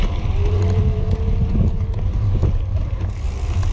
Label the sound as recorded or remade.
recorded